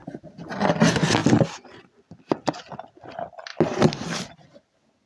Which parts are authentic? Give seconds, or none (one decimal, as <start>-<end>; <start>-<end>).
0.0-1.2; 1.9-5.1